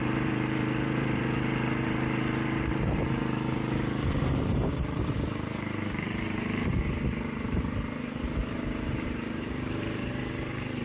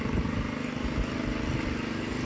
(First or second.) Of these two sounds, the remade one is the first